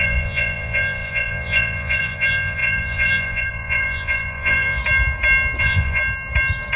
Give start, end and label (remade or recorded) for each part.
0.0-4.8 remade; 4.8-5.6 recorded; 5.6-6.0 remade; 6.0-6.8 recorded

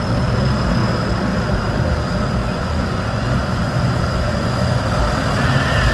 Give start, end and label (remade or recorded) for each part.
0.0-2.4 recorded; 2.4-4.8 remade; 4.8-5.9 recorded

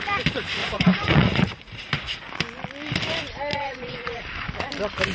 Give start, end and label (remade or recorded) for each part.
0.0-0.6 recorded; 0.6-2.3 remade; 2.3-3.5 recorded; 3.5-4.2 remade; 4.2-5.1 recorded

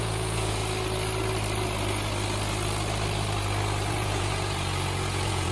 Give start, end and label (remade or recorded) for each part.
0.0-0.6 remade; 0.6-3.9 recorded; 3.9-5.5 remade

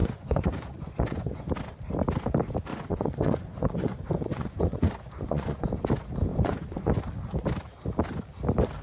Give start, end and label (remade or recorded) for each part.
0.0-1.5 remade; 1.5-2.7 recorded; 2.7-5.7 remade; 5.7-6.3 recorded; 6.3-6.9 remade; 6.9-8.8 recorded